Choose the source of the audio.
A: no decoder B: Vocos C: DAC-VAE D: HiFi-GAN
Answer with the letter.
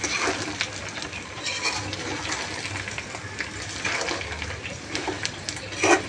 A